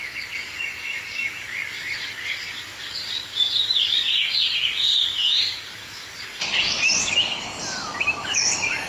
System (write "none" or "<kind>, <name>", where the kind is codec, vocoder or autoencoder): codec, DAC